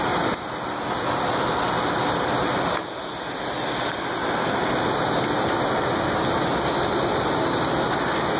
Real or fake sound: real